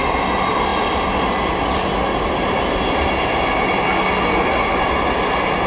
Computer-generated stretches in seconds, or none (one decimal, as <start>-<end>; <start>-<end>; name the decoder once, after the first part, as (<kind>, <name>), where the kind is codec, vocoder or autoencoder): none